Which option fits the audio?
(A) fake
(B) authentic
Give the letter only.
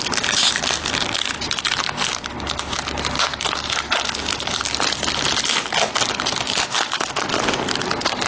B